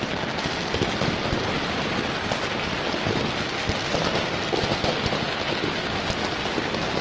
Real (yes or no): yes